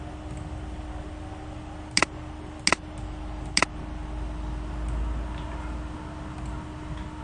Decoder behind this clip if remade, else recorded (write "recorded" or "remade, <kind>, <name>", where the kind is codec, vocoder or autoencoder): recorded